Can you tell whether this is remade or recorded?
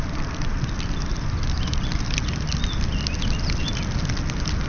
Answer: recorded